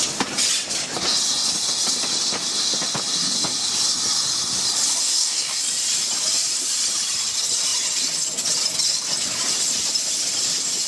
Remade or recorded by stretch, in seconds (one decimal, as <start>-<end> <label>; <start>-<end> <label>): 0.0-5.0 recorded; 5.0-5.6 remade; 5.6-10.9 recorded